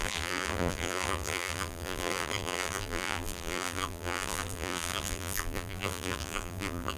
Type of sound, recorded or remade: remade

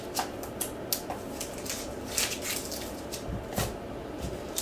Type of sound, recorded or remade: recorded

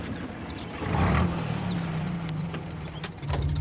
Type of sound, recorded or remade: recorded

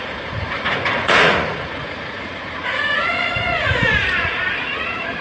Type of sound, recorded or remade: remade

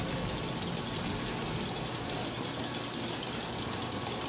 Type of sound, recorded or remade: recorded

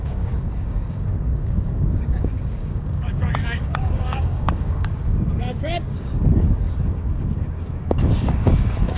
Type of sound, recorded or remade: remade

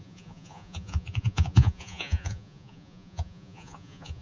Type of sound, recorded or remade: remade